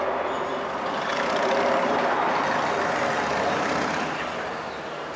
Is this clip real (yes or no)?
yes